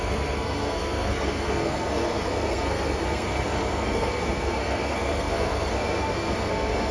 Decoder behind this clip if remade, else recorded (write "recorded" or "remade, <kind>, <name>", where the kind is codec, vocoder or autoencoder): remade, codec, SNAC